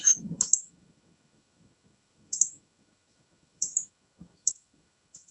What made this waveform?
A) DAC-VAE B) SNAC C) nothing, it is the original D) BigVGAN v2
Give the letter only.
A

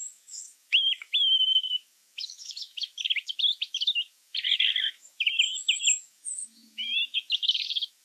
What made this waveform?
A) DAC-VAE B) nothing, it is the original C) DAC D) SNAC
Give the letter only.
A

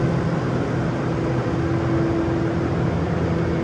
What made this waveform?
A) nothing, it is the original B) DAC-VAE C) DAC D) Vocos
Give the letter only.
A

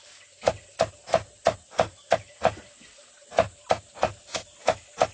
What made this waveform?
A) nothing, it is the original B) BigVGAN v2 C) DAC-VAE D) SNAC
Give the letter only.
A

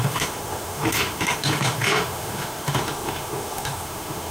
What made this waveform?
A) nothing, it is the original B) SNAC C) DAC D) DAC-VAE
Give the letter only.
D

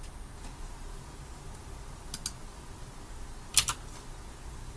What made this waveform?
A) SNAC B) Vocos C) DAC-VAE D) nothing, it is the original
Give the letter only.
D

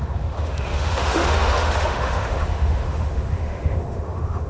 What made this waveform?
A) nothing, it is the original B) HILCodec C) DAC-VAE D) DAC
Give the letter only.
C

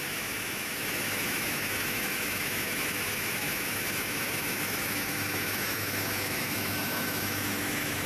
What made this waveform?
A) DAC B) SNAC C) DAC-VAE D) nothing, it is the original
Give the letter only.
C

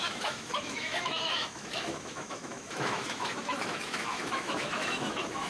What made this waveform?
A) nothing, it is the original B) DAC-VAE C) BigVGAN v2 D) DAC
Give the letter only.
B